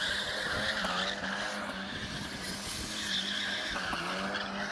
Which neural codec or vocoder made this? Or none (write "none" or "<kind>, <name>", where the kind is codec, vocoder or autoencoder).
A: none